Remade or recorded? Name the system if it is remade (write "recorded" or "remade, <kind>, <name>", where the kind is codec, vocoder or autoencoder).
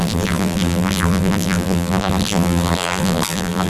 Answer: remade, vocoder, BigVGAN v2